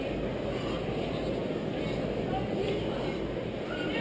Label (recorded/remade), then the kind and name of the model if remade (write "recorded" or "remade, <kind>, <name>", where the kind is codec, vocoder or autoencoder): recorded